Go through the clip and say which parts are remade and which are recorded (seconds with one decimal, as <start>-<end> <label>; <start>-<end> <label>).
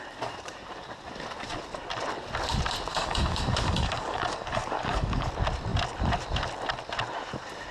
0.0-2.9 recorded; 2.9-5.3 remade; 5.3-7.7 recorded